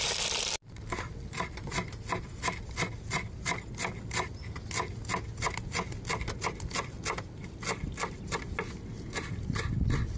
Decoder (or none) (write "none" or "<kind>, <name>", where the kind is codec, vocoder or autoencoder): none